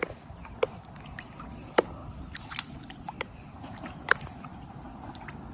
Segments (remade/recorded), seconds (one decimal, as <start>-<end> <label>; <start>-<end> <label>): 0.0-2.0 recorded; 2.0-4.4 remade; 4.4-5.5 recorded